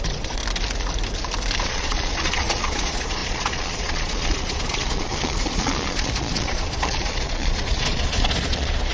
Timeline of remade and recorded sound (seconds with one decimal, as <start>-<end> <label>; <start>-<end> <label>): 0.0-0.4 remade; 0.4-1.6 recorded; 1.6-8.9 remade